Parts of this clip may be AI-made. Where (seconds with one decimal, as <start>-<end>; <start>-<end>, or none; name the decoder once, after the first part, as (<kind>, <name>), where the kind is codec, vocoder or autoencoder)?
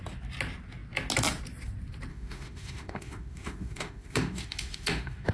2.1-5.3 (autoencoder, DAC-VAE)